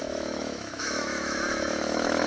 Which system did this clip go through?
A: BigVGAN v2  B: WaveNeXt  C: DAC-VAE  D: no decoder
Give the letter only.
C